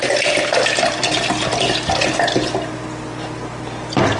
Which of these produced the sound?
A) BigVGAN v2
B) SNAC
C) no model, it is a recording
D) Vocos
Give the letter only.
C